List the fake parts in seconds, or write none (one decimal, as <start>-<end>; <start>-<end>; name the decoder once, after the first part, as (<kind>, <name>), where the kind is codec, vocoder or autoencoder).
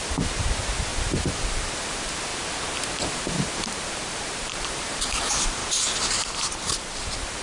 0.0-2.3 (vocoder, BigVGAN v2); 3.0-5.6; 6.8-7.4